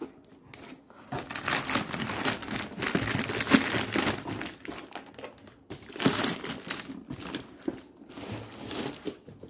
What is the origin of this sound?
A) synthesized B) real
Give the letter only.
B